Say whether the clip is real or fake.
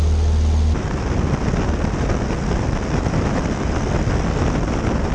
real